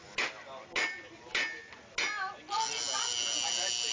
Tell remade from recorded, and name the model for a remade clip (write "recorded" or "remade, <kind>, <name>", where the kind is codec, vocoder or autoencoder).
recorded